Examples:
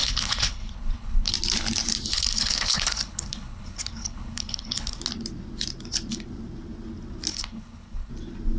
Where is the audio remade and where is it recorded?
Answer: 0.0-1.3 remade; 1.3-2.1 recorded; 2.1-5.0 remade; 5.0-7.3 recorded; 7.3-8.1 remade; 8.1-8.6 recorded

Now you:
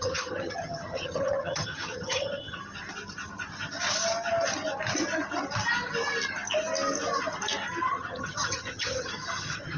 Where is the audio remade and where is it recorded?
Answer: 0.0-2.6 remade; 2.6-7.7 recorded; 7.7-9.8 remade

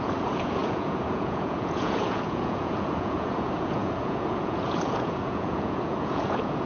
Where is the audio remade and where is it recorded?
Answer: 0.0-6.7 remade

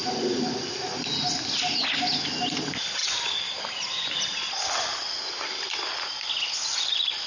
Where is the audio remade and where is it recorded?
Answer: 0.0-7.3 recorded

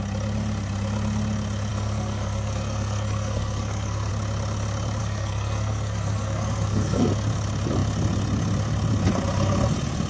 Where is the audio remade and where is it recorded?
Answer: 0.0-1.7 recorded; 1.7-4.1 remade; 4.1-5.0 recorded; 5.0-7.1 remade; 7.1-10.1 recorded

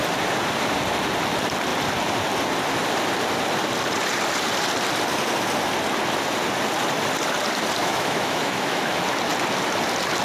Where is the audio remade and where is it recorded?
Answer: 0.0-7.8 recorded; 7.8-8.8 remade; 8.8-10.2 recorded

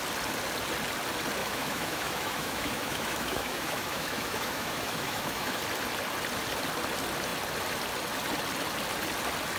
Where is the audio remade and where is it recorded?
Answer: 0.0-1.4 recorded; 1.4-5.6 remade; 5.6-9.6 recorded